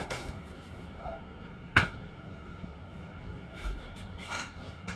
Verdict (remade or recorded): remade